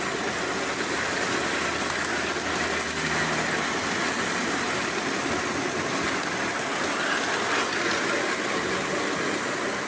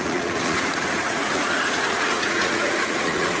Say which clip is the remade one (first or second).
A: second